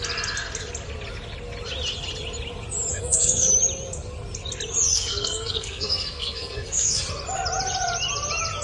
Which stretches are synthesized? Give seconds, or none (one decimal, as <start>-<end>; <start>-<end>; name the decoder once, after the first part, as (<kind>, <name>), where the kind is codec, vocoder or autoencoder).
2.9-3.5 (codec, SNAC); 4.9-7.0